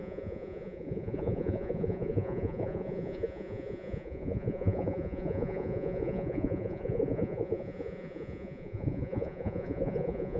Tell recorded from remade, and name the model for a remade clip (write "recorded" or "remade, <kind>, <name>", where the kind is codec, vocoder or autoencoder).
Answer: remade, vocoder, Vocos